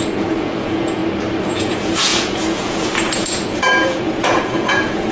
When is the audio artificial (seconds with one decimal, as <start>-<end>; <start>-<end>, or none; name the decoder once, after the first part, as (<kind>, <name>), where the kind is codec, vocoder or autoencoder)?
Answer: 0.0-1.0 (vocoder, Vocos); 1.5-5.1